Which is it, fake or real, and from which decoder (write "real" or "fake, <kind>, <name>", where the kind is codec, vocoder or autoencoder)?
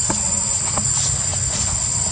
real